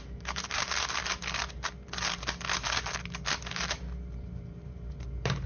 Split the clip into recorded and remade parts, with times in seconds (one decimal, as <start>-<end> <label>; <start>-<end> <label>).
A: 0.0-1.0 remade; 1.0-4.1 recorded; 4.1-5.5 remade